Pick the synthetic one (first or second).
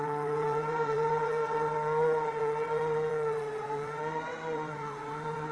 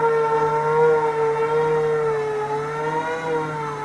first